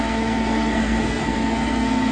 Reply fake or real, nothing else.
fake